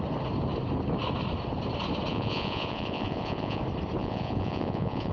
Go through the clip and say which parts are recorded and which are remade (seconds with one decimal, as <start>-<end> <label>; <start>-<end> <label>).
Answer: 0.0-2.1 recorded; 2.1-3.6 remade; 3.6-4.0 recorded; 4.0-5.1 remade